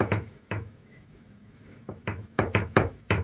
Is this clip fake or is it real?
fake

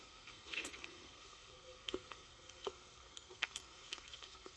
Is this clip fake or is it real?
fake